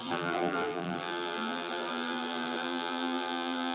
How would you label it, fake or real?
fake